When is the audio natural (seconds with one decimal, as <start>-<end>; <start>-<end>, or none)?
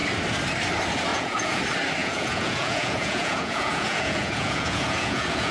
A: 0.0-1.1; 1.6-2.0